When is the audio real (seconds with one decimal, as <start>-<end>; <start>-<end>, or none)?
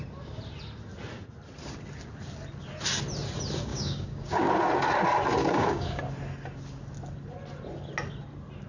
0.0-3.7; 4.5-5.4; 6.0-8.7